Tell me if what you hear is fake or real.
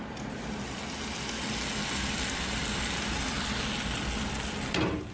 real